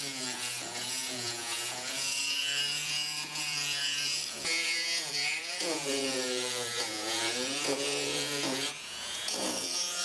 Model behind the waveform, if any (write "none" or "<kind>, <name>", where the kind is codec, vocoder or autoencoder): vocoder, Vocos